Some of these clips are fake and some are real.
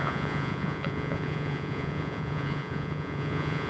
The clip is fake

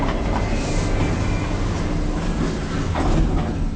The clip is real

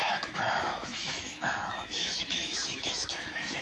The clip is fake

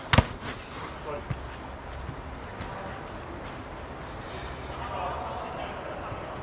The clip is real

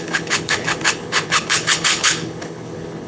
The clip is fake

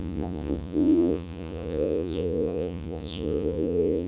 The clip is fake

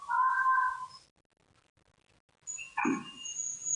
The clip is real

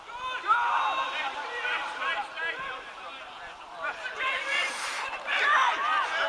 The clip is fake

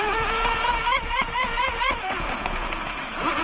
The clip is fake